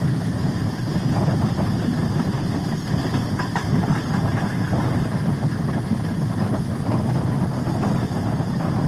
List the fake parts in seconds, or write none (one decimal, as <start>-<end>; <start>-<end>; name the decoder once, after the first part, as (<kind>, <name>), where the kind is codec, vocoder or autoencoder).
2.0-4.7 (vocoder, BigVGAN v2)